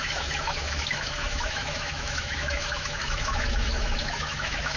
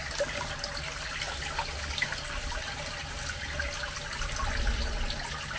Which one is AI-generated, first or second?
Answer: first